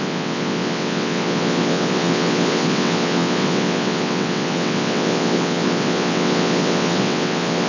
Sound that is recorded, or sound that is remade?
remade